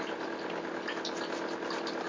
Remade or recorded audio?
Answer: recorded